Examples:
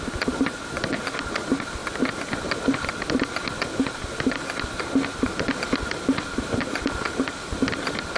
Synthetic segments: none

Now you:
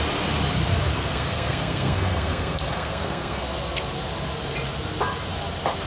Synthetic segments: 0.9-3.4 (codec, SNAC)